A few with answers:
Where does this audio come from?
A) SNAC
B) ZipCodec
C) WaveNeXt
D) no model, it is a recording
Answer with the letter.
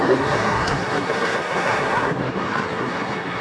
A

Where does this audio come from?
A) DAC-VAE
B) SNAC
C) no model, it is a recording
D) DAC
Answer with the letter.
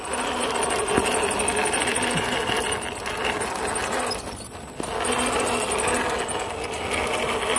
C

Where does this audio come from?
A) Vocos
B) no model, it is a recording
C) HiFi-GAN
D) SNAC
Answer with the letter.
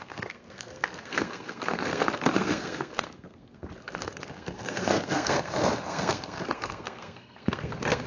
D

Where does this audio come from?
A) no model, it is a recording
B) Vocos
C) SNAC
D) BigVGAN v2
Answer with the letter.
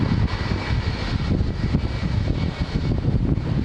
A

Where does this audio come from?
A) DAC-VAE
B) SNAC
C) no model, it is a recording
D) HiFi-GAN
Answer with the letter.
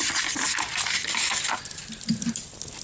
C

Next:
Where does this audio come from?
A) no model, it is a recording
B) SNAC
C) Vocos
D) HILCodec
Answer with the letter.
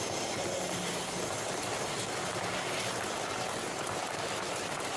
A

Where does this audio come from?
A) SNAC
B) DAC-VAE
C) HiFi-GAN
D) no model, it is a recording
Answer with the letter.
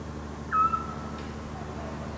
D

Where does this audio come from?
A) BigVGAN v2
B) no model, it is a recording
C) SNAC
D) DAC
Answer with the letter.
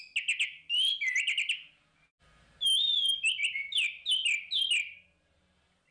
B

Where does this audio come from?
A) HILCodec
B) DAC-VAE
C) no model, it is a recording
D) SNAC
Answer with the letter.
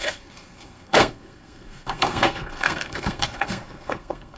D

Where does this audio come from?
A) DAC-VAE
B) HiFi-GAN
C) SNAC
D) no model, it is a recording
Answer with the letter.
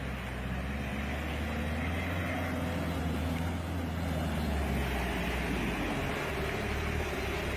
D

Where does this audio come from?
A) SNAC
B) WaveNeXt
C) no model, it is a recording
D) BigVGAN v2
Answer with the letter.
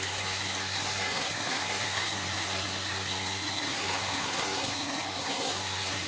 A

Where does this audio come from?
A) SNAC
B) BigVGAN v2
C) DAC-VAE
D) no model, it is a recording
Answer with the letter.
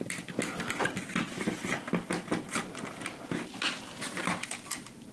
D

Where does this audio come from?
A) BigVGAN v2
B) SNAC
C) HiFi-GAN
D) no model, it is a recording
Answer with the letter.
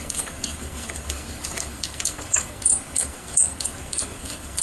B